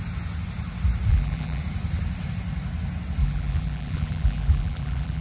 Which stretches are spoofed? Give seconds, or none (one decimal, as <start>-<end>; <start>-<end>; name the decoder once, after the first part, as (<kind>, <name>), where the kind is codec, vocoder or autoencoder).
1.1-1.6 (vocoder, BigVGAN v2); 3.2-5.2

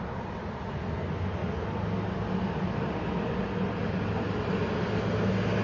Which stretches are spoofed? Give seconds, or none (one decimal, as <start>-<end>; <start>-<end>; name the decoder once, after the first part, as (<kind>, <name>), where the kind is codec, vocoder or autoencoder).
none

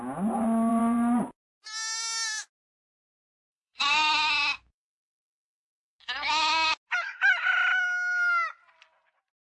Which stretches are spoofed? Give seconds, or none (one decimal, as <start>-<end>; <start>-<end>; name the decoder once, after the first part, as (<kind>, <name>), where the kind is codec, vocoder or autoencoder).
0.7-1.4 (vocoder, BigVGAN v2); 3.4-4.1

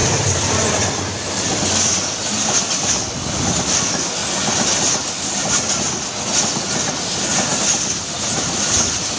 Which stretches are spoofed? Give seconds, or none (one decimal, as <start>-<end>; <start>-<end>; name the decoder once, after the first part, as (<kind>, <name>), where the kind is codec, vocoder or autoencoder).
0.0-0.8 (vocoder, BigVGAN v2)

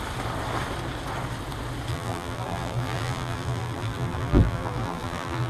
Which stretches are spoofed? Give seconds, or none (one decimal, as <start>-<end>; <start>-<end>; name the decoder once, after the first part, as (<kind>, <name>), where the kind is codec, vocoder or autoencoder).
1.9-5.5 (vocoder, BigVGAN v2)

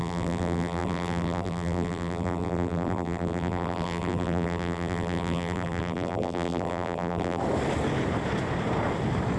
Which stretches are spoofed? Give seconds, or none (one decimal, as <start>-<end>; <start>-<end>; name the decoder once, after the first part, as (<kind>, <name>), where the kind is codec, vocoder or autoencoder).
0.0-7.4 (vocoder, BigVGAN v2)